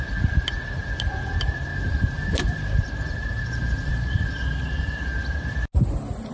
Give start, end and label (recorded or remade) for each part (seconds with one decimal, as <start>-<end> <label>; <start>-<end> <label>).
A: 0.0-1.7 recorded; 1.7-5.0 remade; 5.0-6.3 recorded